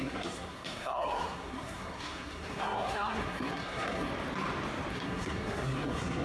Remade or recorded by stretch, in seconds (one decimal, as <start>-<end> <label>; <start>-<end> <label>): 0.0-4.1 remade; 4.1-4.9 recorded; 4.9-6.2 remade